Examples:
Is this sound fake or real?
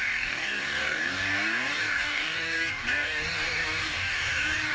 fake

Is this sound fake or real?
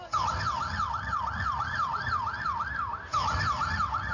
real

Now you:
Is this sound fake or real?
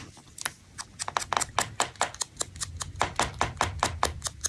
real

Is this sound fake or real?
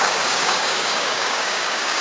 fake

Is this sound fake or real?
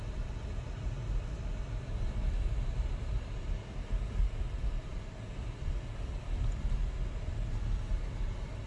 real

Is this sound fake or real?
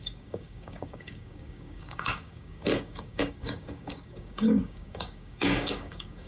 fake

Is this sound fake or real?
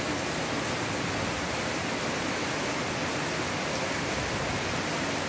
real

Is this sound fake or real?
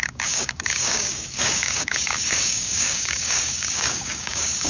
fake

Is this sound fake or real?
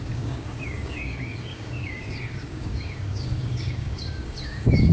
fake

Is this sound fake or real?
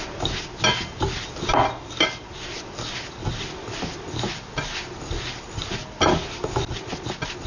real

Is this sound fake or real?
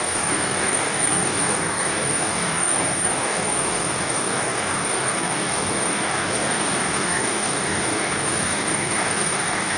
fake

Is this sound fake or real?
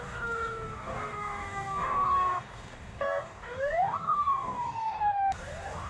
fake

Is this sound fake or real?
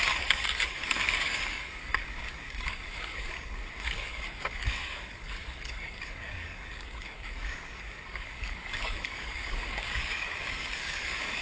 fake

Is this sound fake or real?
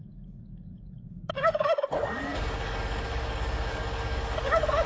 fake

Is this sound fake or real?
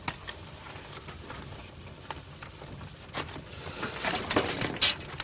real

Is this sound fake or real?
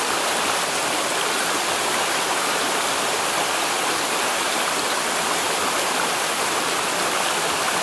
real